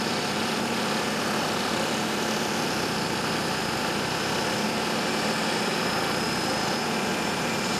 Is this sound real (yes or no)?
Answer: no